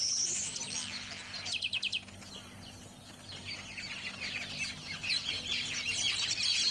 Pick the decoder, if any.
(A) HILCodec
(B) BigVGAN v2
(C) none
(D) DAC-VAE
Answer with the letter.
C